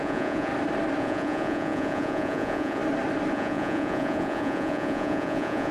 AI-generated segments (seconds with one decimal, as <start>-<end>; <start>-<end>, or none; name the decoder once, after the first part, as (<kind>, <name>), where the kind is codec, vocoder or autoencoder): 0.0-0.5 (vocoder, Vocos); 1.0-2.8; 3.3-5.7